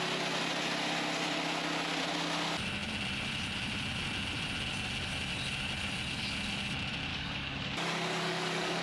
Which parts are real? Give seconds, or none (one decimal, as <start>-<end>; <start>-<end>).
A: 0.0-7.1